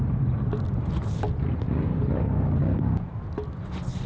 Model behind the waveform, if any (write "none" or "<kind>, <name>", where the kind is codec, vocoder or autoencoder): none